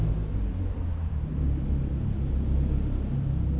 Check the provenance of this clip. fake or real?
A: real